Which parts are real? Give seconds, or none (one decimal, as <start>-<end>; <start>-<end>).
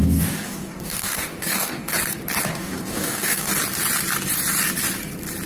1.9-2.5; 3.5-5.5